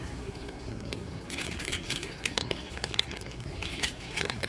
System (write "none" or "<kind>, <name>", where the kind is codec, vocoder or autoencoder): codec, SNAC